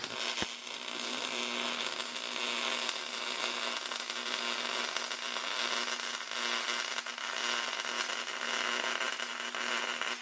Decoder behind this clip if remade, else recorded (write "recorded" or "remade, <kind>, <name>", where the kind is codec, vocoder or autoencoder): recorded